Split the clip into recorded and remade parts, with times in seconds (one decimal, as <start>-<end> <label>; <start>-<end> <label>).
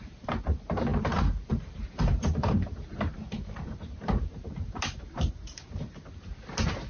0.0-6.9 remade